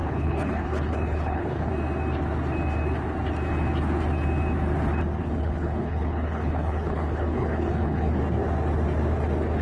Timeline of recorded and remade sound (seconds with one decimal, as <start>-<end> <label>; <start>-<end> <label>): 0.0-1.7 remade; 1.7-5.2 recorded; 5.2-8.2 remade; 8.2-9.6 recorded